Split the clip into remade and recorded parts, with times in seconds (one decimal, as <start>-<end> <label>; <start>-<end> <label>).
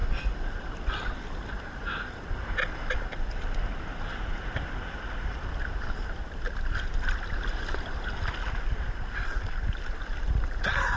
0.0-11.0 recorded